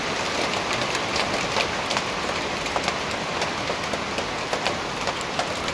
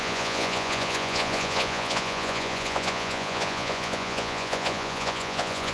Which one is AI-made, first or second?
second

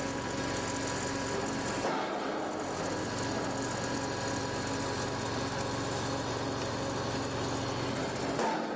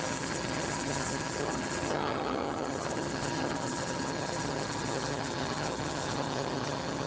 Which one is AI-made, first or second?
second